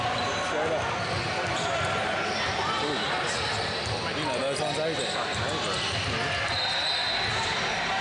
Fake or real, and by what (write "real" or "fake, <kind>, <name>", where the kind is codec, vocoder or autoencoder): real